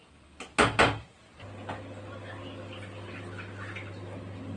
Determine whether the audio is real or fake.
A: real